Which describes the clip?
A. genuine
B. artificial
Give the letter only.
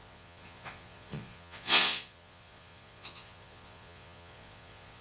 B